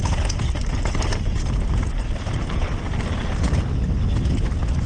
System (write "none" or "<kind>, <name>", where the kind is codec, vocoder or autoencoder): none